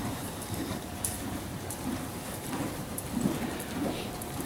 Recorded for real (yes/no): no